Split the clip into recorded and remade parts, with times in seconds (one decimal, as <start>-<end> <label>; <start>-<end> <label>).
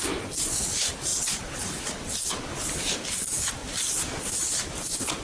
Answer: 0.0-1.1 recorded; 1.1-1.6 remade; 1.6-3.6 recorded; 3.6-4.2 remade; 4.2-5.2 recorded